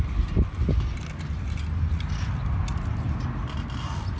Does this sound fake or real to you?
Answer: real